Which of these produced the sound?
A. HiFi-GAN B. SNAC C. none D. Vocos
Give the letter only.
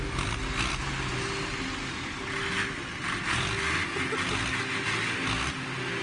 C